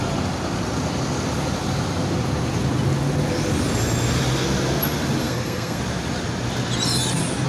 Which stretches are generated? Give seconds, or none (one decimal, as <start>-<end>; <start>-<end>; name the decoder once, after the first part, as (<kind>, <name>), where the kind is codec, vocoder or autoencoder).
5.2-5.8 (codec, SNAC)